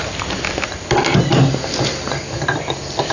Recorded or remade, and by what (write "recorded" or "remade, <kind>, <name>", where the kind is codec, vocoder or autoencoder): recorded